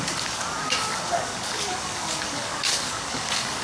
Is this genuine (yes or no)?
no